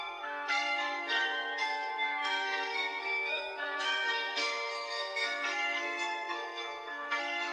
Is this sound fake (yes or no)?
yes